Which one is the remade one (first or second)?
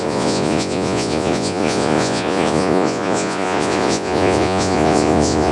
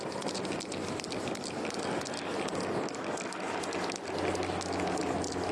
first